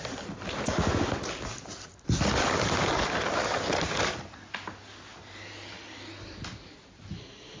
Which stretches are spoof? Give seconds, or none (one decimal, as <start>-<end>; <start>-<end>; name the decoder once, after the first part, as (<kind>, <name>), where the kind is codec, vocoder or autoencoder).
none